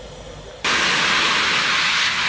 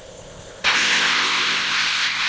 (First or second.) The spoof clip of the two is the second